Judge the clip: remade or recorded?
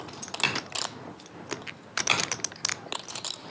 recorded